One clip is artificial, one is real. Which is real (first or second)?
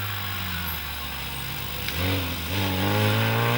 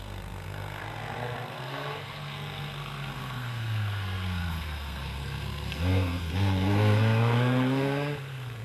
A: first